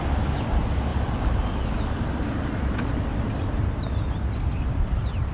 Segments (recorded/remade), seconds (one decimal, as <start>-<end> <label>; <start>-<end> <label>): 0.0-0.9 remade; 0.9-1.7 recorded; 1.7-3.1 remade; 3.1-4.3 recorded; 4.3-5.3 remade